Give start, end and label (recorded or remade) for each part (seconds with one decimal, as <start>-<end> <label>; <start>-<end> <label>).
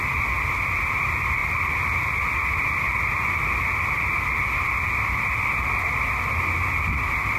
0.0-7.4 recorded